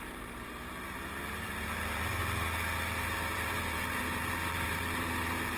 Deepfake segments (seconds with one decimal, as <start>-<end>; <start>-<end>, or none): 0.0-2.2; 3.0-5.6